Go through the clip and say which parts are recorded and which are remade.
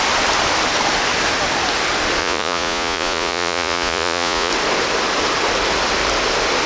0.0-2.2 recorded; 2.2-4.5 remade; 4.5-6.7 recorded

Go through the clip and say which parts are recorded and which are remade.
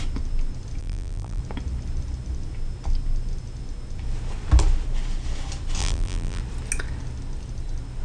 0.0-0.8 recorded; 0.8-1.4 remade; 1.4-5.8 recorded; 5.8-6.4 remade; 6.4-8.0 recorded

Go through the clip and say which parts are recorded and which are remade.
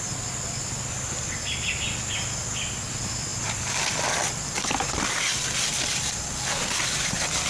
0.0-3.3 recorded; 3.3-6.4 remade; 6.4-7.5 recorded